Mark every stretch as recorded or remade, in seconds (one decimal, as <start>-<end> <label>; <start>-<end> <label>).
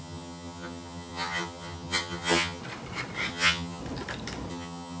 0.0-2.6 remade; 2.6-3.3 recorded; 3.3-3.8 remade; 3.8-4.5 recorded; 4.5-5.0 remade